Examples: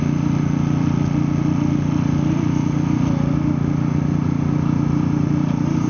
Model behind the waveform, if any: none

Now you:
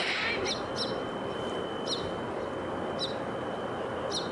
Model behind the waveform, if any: none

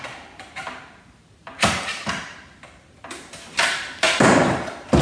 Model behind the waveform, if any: vocoder, BigVGAN v2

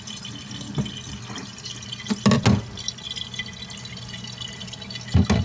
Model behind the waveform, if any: none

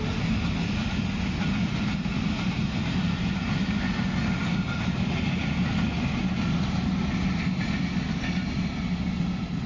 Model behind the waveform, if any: none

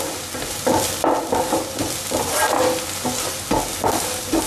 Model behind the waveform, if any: none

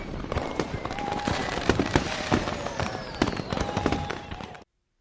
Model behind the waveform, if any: vocoder, BigVGAN v2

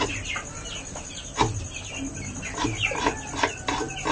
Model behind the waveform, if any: none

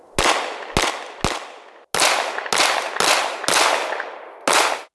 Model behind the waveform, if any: none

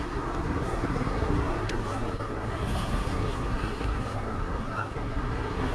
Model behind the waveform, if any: codec, SNAC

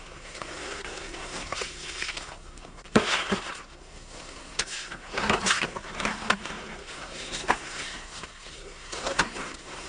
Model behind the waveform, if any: codec, SNAC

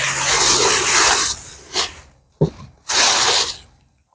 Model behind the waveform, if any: none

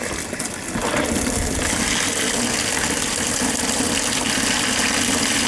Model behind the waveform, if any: none